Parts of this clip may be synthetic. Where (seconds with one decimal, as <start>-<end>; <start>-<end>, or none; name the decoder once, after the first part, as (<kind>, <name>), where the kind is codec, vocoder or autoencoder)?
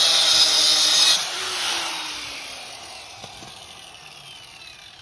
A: 0.7-1.4 (vocoder, BigVGAN v2)